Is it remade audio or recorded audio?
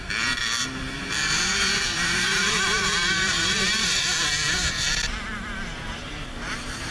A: remade